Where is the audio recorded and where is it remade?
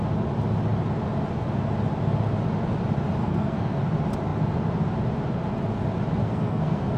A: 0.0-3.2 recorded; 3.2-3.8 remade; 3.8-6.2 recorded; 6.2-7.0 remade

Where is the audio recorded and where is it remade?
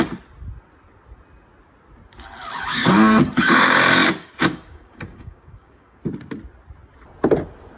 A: 0.0-2.7 recorded; 2.7-6.0 remade; 6.0-7.8 recorded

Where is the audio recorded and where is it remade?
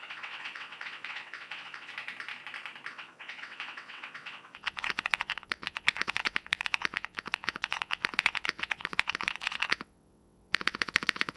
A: 0.0-1.9 remade; 1.9-2.9 recorded; 2.9-11.4 remade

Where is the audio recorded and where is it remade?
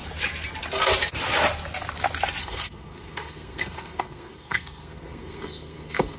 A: 0.0-2.4 recorded; 2.4-6.2 remade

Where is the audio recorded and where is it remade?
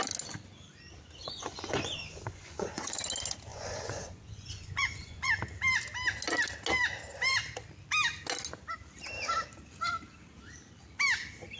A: 0.0-1.2 recorded; 1.2-3.0 remade; 3.0-3.5 recorded; 3.5-5.3 remade; 5.3-11.6 recorded